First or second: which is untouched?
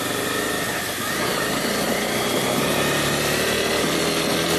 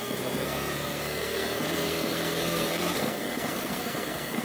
first